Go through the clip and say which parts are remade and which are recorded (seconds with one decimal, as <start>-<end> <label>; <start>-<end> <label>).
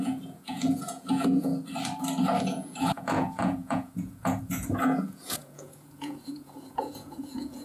0.0-1.5 remade; 1.5-2.4 recorded; 2.4-7.6 remade